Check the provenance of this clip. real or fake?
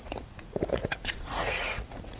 fake